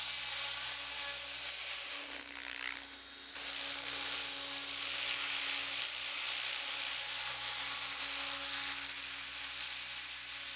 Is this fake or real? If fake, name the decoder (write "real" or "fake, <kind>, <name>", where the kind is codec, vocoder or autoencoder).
real